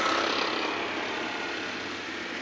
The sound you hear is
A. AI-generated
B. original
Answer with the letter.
B